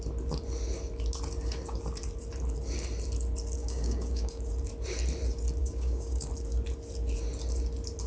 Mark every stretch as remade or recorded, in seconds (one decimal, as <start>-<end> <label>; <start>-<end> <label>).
0.0-3.6 recorded; 3.6-4.4 remade; 4.4-5.6 recorded; 5.6-6.3 remade; 6.3-8.1 recorded